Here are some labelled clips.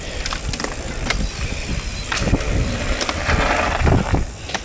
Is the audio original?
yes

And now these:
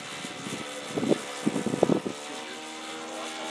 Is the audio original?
yes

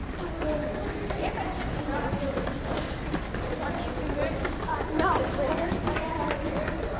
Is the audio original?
yes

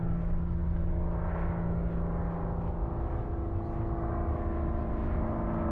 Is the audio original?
yes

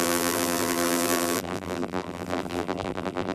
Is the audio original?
no